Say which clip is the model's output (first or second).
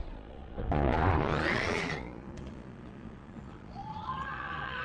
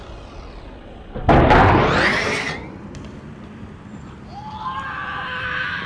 first